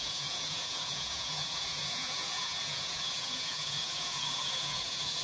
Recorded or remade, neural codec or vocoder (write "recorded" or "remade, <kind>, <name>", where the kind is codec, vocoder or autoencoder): remade, vocoder, Vocos